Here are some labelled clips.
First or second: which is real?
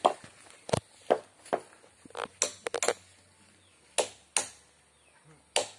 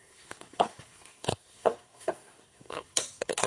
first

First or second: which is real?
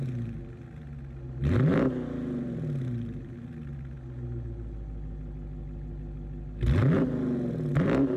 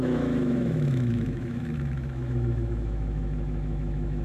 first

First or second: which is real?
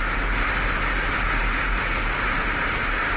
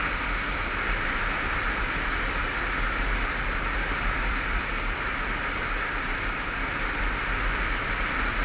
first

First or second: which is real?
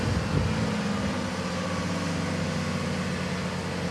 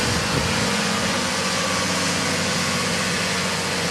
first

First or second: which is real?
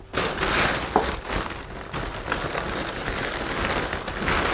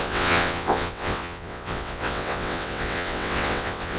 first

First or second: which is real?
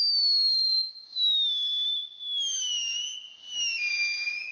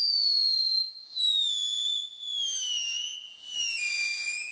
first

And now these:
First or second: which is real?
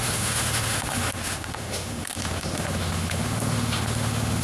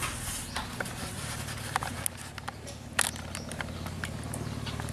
second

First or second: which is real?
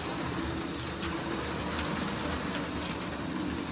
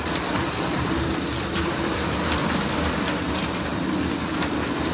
first